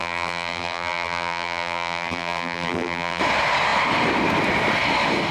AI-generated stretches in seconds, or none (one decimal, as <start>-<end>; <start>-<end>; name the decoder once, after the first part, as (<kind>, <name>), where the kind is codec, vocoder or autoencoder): 0.0-3.2 (vocoder, BigVGAN v2)